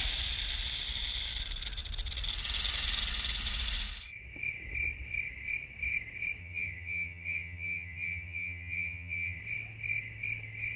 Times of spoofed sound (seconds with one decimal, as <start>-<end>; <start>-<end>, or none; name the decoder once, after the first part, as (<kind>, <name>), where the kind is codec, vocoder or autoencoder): 6.4-9.4 (vocoder, HiFi-GAN)